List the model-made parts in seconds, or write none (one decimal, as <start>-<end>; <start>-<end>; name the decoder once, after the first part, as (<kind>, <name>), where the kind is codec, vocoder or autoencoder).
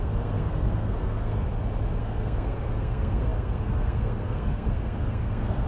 0.0-1.4 (codec, SNAC); 2.0-5.7